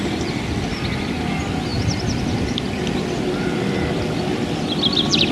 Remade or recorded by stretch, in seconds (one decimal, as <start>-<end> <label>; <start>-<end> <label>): 0.0-5.3 recorded